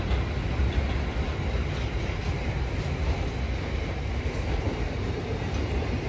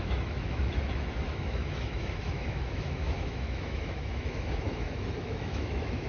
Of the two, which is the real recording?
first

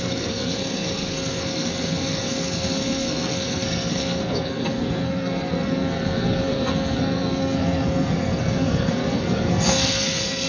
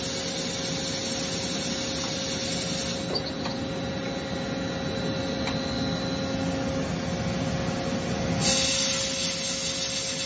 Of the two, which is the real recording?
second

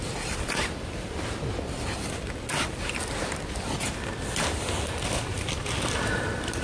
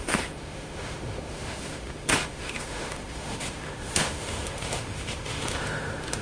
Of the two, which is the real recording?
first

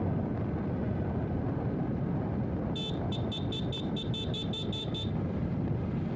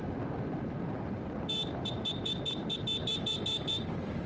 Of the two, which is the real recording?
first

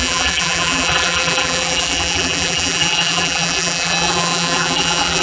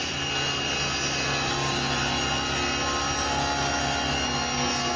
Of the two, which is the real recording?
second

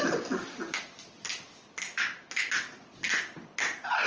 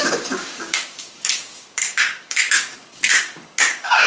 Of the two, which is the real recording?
first